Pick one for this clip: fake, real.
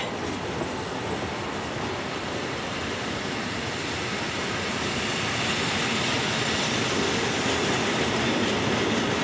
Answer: real